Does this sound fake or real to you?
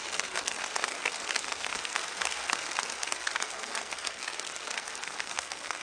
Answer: fake